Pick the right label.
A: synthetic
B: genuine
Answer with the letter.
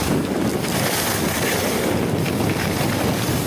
B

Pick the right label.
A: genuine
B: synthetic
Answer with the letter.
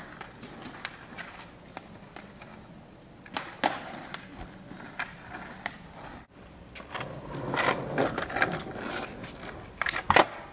A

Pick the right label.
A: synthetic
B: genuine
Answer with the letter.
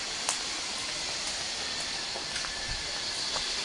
B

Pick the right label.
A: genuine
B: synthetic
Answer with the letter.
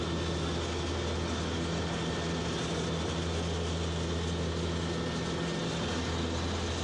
A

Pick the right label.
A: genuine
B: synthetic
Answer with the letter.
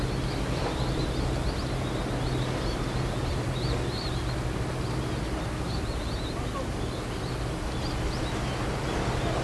A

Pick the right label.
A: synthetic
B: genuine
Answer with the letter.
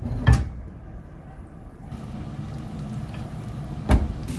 B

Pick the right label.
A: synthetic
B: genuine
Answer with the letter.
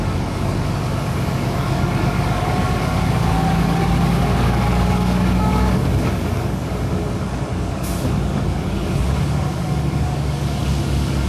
A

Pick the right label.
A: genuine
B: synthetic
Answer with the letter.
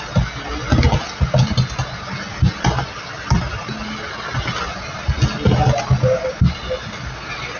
A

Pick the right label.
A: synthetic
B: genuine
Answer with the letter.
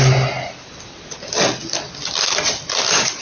B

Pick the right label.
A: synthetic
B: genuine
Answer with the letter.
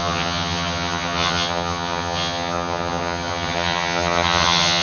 A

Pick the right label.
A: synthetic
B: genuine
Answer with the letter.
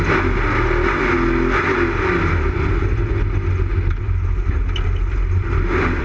B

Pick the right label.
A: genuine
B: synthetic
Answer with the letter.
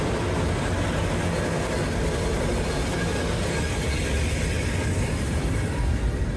A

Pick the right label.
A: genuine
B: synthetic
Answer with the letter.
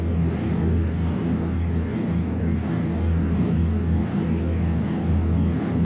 B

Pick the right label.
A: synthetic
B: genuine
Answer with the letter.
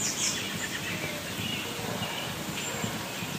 B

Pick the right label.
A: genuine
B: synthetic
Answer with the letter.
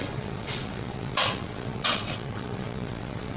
B